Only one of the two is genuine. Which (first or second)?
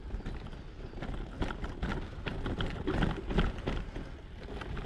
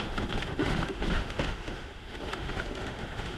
first